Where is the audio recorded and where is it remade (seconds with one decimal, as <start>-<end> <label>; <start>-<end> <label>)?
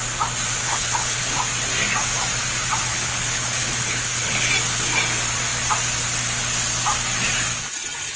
0.0-0.6 recorded; 0.6-1.4 remade; 1.4-2.9 recorded; 2.9-4.5 remade; 4.5-8.2 recorded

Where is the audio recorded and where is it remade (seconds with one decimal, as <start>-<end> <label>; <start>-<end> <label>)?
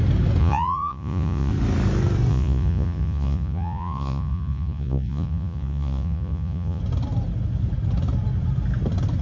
0.0-0.4 recorded; 0.4-1.5 remade; 1.5-2.3 recorded; 2.3-6.8 remade; 6.8-9.2 recorded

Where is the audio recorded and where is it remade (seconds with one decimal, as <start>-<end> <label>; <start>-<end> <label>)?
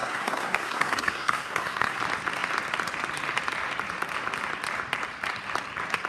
0.0-2.0 remade; 2.0-6.1 recorded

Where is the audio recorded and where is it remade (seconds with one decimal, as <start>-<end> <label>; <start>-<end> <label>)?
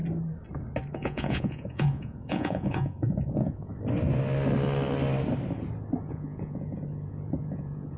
0.0-0.9 recorded; 0.9-3.7 remade; 3.7-6.0 recorded; 6.0-8.0 remade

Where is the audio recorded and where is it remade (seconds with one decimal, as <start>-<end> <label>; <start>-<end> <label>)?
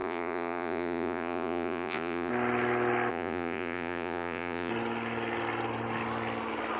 0.0-2.3 remade; 2.3-3.1 recorded; 3.1-4.7 remade; 4.7-6.8 recorded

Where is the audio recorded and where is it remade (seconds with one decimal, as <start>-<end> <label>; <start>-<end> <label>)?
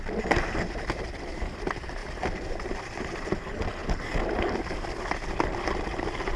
0.0-6.4 recorded